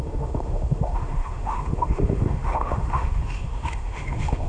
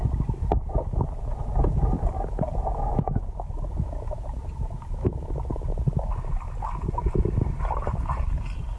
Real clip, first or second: second